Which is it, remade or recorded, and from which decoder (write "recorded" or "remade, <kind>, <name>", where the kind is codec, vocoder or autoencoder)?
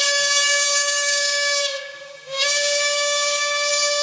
remade, codec, DAC